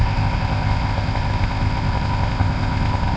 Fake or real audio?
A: fake